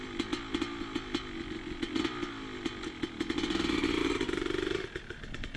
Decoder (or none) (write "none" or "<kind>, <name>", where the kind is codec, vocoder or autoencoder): none